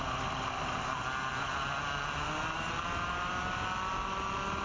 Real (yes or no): yes